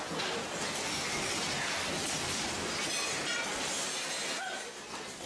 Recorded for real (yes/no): yes